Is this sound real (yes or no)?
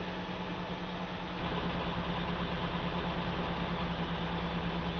yes